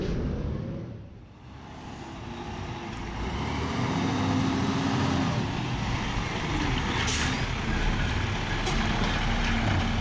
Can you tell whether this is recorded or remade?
recorded